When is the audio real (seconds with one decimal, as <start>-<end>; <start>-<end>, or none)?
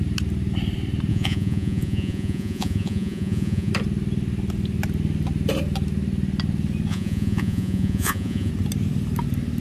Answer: 0.0-1.1; 3.7-6.9; 8.5-9.6